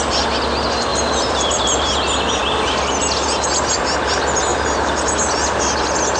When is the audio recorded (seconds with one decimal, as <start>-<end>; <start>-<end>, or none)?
0.0-0.9; 1.9-4.5; 5.1-6.2